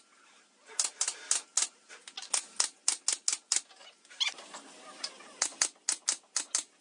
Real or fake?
real